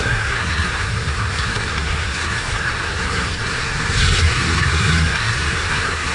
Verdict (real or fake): fake